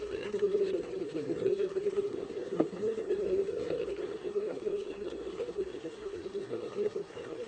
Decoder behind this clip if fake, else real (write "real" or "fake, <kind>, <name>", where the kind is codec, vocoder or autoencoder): fake, codec, SNAC